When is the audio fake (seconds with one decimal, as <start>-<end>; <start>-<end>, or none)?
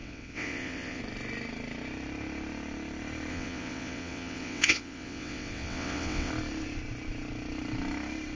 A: 0.0-1.0; 3.3-6.3